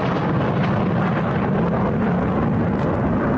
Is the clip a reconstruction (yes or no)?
no